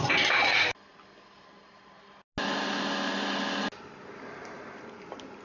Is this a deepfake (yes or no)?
no